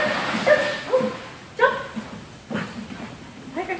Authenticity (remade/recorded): recorded